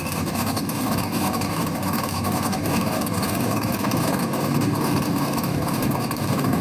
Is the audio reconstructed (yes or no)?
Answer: yes